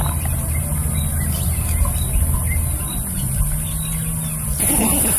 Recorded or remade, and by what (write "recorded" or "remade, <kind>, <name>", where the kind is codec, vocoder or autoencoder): recorded